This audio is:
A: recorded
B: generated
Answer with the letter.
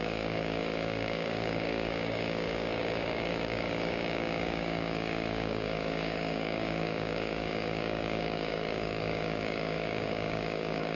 B